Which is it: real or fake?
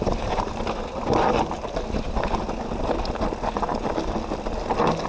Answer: real